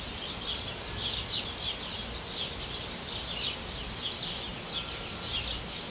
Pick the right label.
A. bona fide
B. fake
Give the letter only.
A